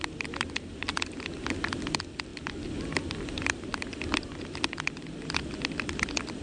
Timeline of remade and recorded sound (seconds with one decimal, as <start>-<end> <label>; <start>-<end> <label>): 0.0-6.4 recorded